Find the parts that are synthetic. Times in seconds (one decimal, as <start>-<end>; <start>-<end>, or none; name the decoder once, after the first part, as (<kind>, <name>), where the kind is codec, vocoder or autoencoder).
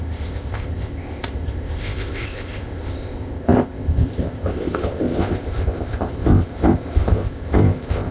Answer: 0.0-8.1 (codec, ZipCodec)